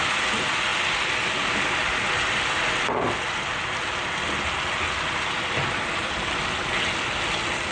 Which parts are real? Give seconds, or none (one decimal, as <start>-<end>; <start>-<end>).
0.0-7.7